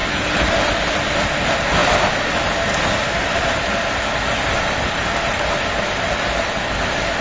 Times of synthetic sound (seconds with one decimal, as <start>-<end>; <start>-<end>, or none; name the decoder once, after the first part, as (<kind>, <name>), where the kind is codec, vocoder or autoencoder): none